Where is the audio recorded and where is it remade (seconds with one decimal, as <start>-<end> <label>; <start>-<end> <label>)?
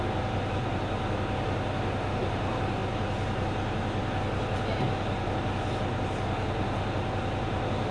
0.0-7.9 recorded